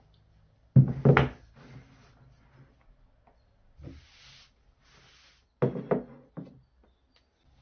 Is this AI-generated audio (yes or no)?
no